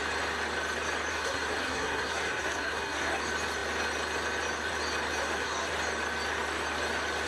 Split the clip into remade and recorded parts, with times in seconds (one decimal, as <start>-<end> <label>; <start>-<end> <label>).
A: 0.0-1.1 recorded; 1.1-3.2 remade; 3.2-5.2 recorded; 5.2-5.7 remade; 5.7-7.3 recorded